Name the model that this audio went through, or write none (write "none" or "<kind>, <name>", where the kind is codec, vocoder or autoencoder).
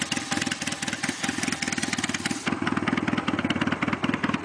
none